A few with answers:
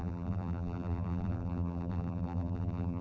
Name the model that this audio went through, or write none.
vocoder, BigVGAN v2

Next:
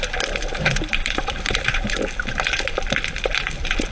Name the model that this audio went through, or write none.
none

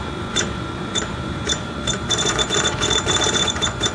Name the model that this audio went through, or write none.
vocoder, Vocos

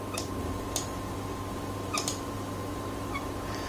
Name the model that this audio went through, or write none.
vocoder, BigVGAN v2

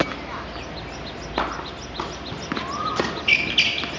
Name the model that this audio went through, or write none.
none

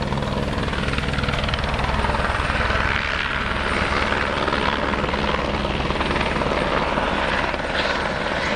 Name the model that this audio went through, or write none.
none